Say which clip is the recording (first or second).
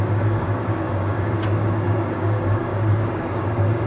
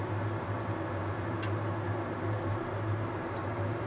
second